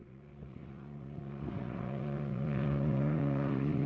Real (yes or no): no